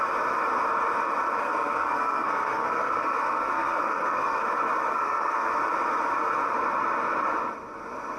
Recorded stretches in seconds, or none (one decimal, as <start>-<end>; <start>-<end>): 0.0-1.4; 4.4-4.9; 5.5-8.2